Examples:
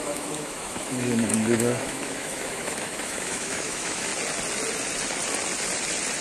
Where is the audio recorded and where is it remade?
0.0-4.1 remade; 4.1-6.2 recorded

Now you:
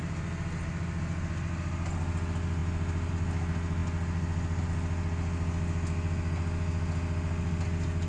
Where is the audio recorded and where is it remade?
0.0-8.1 recorded